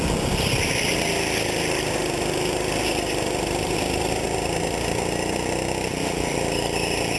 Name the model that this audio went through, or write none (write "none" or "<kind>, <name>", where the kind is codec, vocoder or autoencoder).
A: none